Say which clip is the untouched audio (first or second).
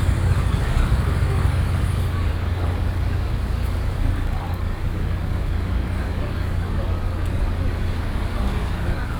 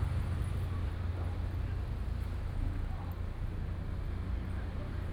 second